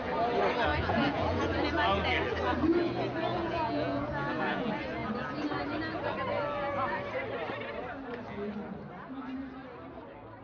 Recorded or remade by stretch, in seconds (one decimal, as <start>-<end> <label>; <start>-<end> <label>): 0.0-0.7 recorded; 0.7-1.7 remade; 1.7-3.3 recorded; 3.3-4.6 remade; 4.6-10.4 recorded